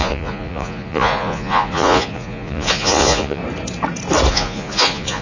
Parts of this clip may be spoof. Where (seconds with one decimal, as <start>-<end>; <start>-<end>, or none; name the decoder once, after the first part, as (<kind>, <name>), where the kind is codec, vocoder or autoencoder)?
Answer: 0.0-3.4 (vocoder, Vocos); 4.3-5.2

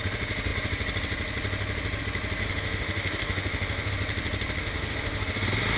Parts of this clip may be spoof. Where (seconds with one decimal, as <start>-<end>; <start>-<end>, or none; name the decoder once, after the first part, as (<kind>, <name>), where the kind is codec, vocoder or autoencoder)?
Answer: 2.4-3.9 (autoencoder, DAC-VAE); 4.6-5.2

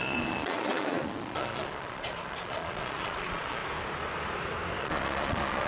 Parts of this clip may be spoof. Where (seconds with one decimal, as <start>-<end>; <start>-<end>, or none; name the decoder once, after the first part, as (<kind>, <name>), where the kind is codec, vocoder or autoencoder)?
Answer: 0.0-3.6 (vocoder, Vocos); 4.8-5.7

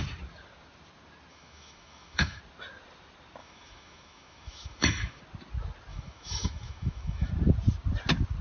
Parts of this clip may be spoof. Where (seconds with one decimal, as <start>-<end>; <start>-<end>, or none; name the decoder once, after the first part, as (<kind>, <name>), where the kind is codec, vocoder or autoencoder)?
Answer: 1.3-2.4 (autoencoder, DAC-VAE); 3.4-5.2; 5.9-7.3